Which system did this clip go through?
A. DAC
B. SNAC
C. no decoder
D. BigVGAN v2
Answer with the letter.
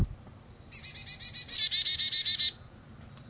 C